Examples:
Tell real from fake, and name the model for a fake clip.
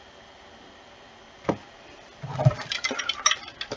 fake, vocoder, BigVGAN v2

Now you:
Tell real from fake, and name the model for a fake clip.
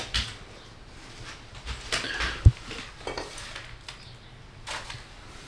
real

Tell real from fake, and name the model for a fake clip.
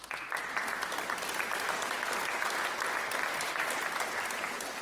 real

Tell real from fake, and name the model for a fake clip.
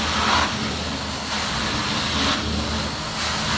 real